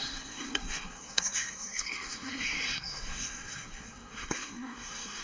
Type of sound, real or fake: fake